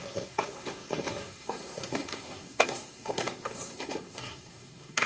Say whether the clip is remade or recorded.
remade